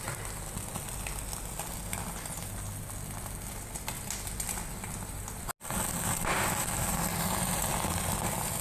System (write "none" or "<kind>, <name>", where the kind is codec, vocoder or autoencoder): none